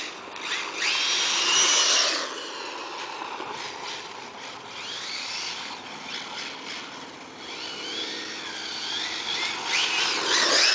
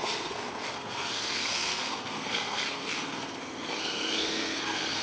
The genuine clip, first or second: first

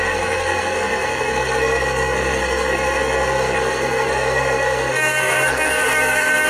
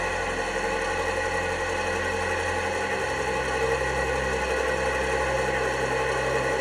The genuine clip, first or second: second